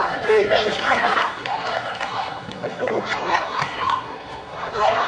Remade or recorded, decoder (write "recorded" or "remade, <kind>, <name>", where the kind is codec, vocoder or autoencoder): remade, codec, SNAC